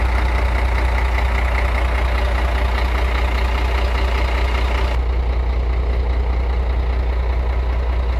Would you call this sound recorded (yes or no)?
yes